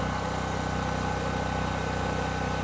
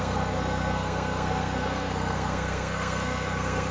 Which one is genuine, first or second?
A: first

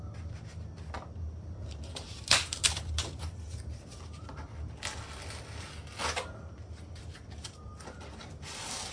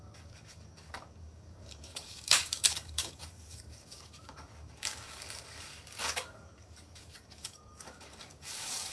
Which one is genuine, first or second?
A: first